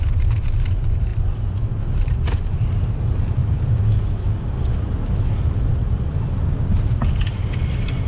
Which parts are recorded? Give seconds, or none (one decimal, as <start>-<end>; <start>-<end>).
1.1-1.7; 3.4-7.6